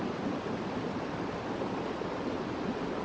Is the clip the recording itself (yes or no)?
yes